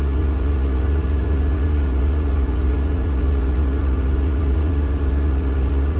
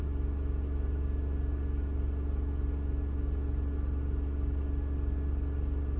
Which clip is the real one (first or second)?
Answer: second